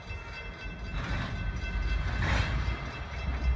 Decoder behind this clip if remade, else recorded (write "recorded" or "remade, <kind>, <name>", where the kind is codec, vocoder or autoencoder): recorded